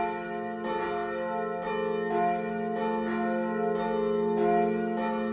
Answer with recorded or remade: recorded